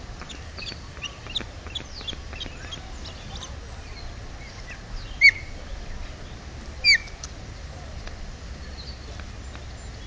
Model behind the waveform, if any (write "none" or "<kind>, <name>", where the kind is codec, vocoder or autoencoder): none